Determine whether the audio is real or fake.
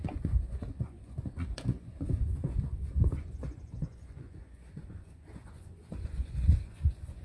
fake